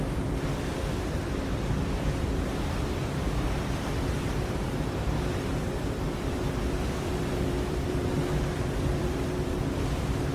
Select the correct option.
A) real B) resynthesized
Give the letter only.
B